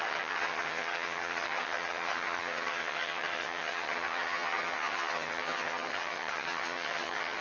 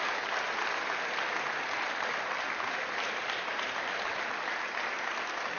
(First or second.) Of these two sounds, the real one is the second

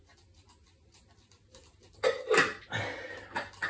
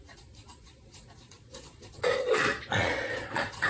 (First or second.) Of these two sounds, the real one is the first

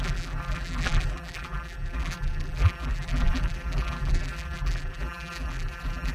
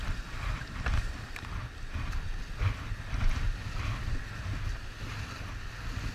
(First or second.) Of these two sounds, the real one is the second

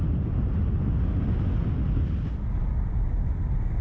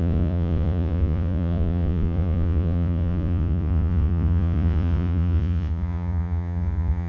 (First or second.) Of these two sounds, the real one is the first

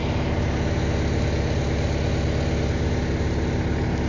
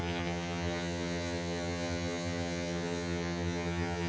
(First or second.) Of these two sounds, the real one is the first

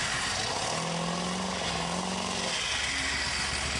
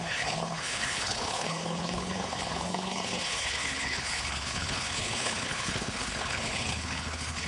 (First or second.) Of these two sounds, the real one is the first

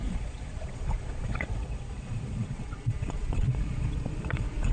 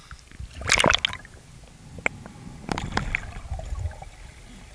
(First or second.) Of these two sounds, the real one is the second